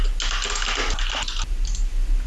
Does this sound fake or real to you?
real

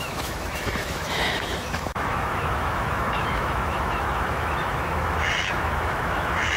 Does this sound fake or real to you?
fake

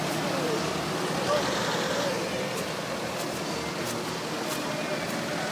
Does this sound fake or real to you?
real